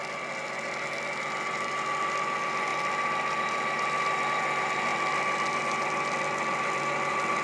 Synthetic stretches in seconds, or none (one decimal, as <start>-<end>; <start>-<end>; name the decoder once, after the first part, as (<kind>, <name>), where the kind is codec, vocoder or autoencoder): none